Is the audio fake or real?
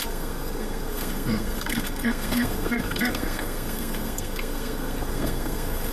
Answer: fake